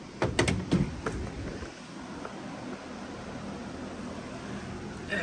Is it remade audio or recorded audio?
recorded